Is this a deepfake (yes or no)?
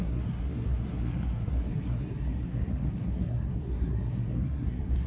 yes